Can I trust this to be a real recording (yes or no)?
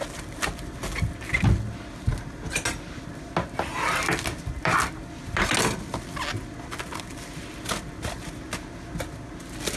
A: yes